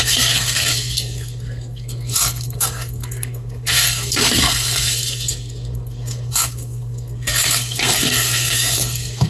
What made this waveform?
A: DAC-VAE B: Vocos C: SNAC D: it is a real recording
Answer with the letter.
C